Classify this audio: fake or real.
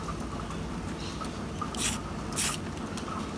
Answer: real